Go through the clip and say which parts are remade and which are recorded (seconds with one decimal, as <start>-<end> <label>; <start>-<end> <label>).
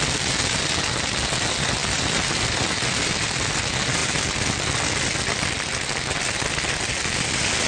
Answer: 0.0-1.8 recorded; 1.8-3.6 remade; 3.6-7.7 recorded